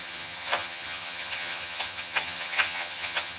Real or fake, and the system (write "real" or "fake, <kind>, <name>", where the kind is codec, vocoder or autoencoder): fake, vocoder, HiFi-GAN